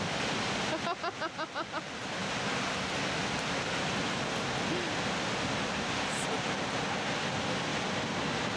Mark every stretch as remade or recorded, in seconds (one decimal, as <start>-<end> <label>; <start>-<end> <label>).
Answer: 0.0-8.6 recorded